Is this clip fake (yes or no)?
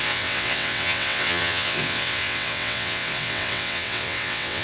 yes